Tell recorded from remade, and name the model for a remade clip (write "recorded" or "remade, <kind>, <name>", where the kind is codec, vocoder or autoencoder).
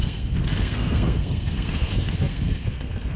remade, codec, SNAC